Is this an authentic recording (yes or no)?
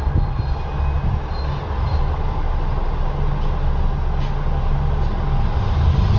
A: yes